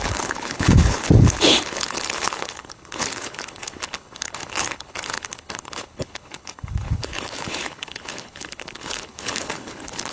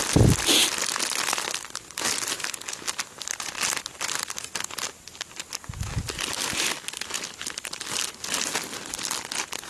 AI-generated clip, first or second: first